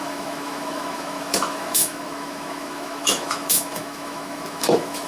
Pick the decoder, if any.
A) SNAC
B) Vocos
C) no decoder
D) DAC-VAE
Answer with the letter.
D